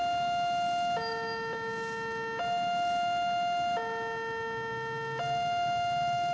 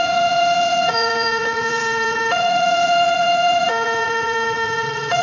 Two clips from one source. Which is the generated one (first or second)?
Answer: second